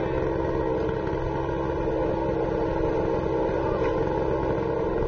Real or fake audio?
real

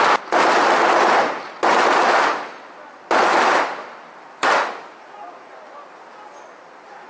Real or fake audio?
real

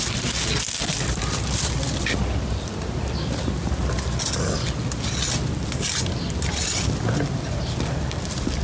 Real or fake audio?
real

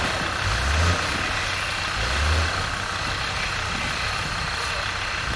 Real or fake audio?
real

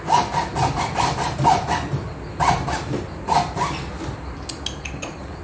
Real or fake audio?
real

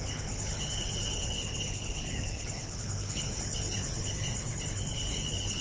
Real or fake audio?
fake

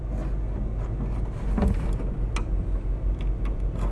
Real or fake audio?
real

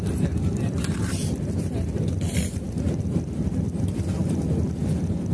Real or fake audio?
real